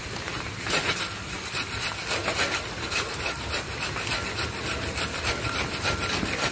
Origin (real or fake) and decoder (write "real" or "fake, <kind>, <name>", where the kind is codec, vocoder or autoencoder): fake, vocoder, BigVGAN v2